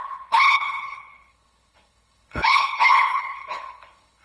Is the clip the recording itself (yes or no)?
no